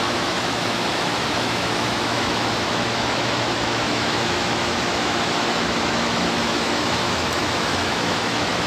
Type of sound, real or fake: fake